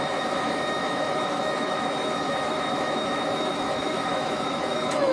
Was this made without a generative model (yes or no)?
no